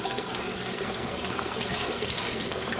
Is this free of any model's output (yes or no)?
no